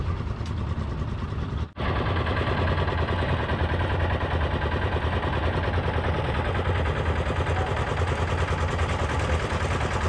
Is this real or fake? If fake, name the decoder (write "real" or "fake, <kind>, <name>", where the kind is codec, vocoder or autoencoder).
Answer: real